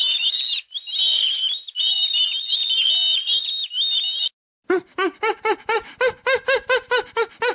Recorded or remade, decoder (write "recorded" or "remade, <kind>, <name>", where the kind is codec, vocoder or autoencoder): recorded